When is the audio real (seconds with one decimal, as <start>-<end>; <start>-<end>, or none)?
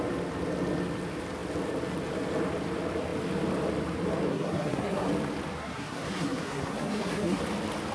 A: 0.0-4.3; 5.1-5.6; 7.4-7.9